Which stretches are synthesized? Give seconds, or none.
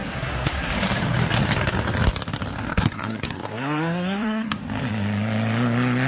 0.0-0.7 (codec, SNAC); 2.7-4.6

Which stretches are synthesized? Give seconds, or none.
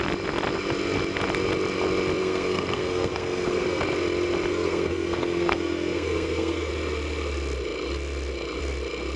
2.2-3.8 (codec, SNAC); 4.5-6.7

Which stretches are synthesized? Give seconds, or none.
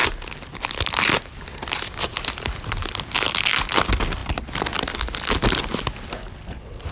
none